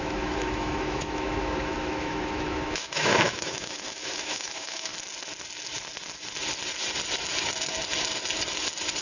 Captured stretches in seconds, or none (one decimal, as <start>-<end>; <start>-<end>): 4.9-9.0